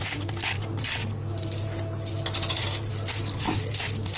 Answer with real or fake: real